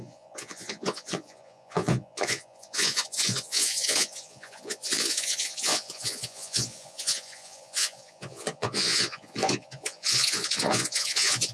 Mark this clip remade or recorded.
remade